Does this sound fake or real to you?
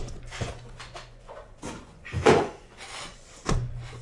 fake